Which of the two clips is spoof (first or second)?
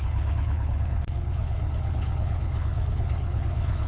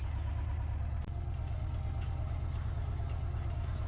first